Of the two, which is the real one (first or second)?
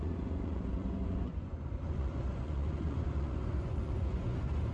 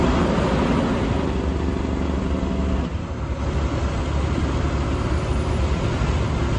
second